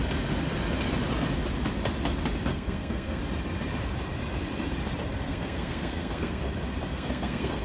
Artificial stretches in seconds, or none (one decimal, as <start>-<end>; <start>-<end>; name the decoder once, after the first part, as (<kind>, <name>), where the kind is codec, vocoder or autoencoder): 2.5-3.2 (codec, SNAC); 5.3-6.4; 6.9-7.6